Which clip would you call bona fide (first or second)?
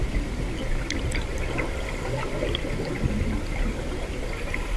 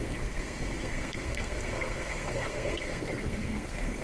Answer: first